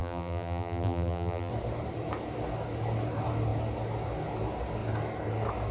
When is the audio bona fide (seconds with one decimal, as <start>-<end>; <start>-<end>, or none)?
1.5-5.7